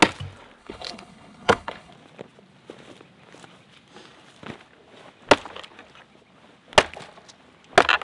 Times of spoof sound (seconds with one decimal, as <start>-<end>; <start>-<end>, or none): 0.6-1.9